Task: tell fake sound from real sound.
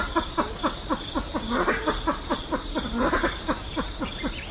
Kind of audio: fake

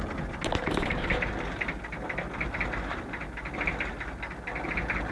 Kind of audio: real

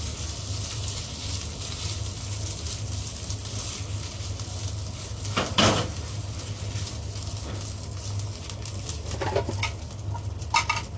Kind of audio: real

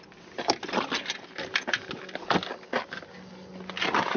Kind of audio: real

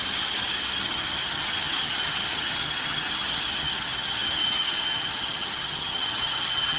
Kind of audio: fake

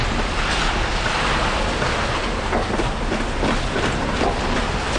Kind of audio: real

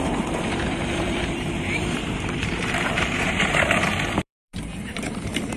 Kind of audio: fake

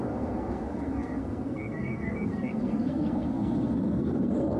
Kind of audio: fake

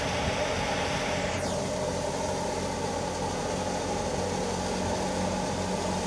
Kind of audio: real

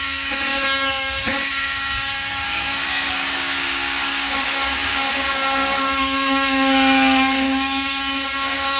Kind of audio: fake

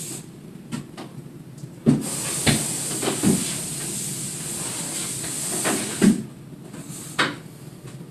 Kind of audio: real